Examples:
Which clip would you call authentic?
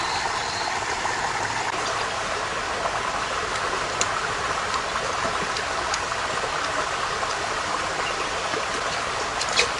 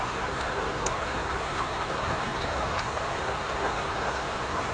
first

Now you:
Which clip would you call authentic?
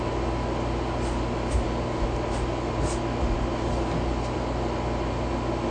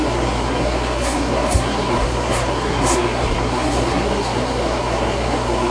first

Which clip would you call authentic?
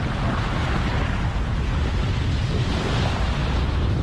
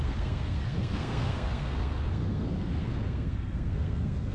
first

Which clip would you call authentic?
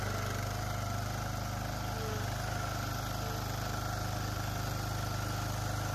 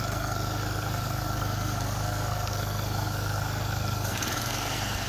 first